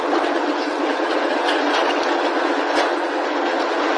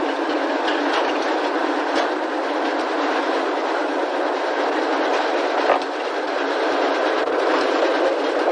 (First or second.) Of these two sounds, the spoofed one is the first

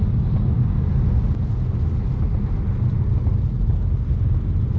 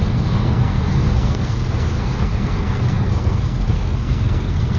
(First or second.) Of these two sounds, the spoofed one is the second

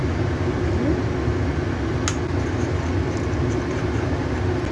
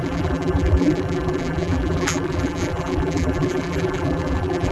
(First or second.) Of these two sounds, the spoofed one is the second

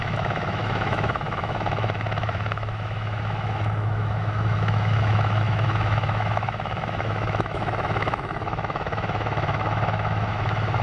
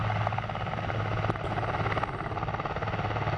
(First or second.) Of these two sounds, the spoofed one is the first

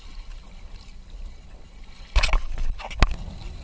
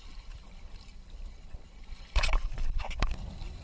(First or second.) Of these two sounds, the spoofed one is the second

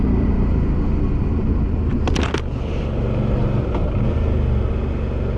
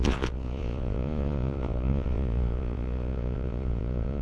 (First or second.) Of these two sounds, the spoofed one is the second